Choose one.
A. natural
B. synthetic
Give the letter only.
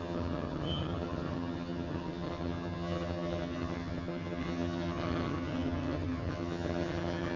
B